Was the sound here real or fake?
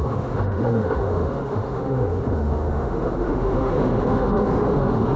fake